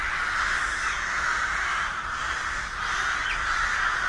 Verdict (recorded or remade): recorded